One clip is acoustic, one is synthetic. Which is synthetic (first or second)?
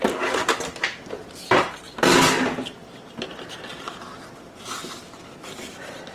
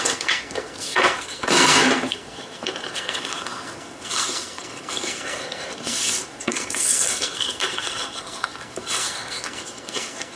second